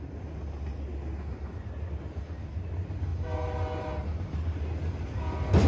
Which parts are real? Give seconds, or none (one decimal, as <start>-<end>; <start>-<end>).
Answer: 0.0-5.7